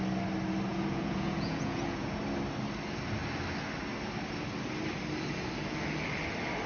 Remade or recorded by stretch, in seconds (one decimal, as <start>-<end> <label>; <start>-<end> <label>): 0.0-0.7 recorded; 0.7-2.2 remade; 2.2-6.7 recorded